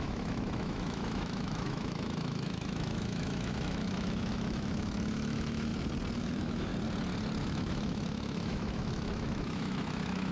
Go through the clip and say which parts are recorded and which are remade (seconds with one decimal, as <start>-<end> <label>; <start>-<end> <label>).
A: 0.0-5.7 remade; 5.7-6.2 recorded; 6.2-6.7 remade; 6.7-7.4 recorded; 7.4-10.3 remade